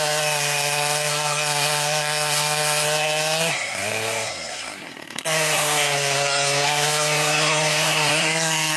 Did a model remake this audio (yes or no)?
yes